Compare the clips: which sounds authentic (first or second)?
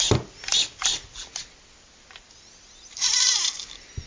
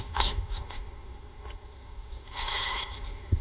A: first